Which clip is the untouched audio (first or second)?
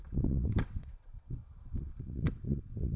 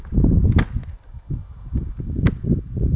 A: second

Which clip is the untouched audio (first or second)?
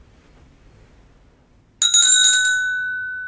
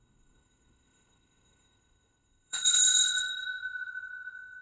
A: first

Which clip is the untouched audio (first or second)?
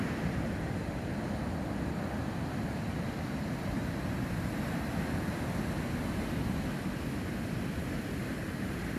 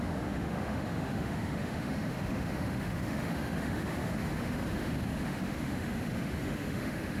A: first